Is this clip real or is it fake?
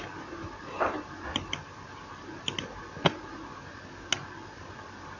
real